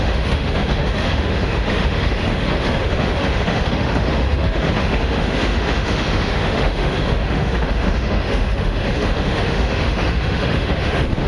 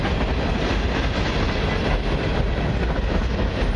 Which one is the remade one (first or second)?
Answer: first